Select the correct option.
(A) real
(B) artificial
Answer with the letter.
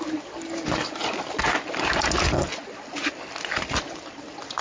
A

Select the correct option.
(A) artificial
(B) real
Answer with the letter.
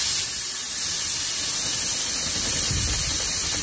B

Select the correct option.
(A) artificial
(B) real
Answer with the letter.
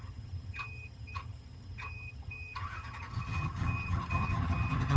A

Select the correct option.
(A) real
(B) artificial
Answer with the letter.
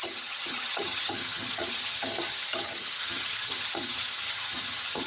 B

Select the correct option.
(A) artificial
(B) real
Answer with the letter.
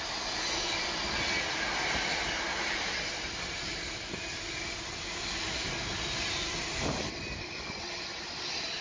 B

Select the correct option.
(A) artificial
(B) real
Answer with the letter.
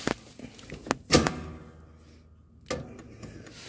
B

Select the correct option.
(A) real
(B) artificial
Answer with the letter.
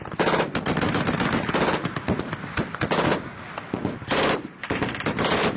A